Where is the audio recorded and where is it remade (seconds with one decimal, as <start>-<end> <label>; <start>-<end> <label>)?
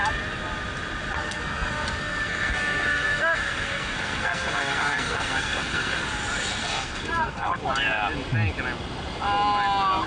0.0-1.2 recorded; 1.2-6.0 remade; 6.0-6.6 recorded; 6.6-7.6 remade; 7.6-10.1 recorded